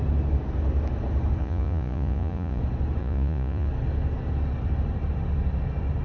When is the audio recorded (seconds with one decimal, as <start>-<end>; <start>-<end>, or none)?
0.0-1.4; 2.6-3.0; 3.7-6.0